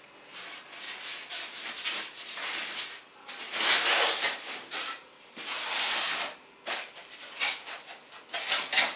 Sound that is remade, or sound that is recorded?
recorded